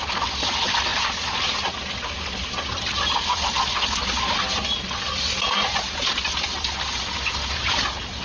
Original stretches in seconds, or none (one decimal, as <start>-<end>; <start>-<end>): 0.0-8.2